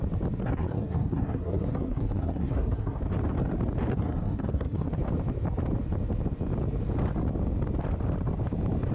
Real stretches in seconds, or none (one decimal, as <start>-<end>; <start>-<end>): 0.0-0.4; 3.0-3.9; 4.9-8.9